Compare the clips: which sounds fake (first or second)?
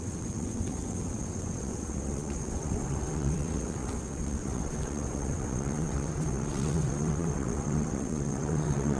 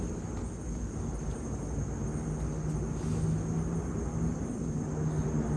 first